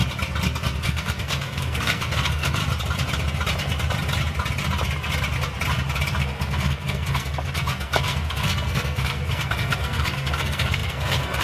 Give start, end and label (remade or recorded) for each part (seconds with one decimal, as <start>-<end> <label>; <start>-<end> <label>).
0.0-0.8 recorded; 0.8-2.6 remade; 2.6-6.2 recorded; 6.2-11.4 remade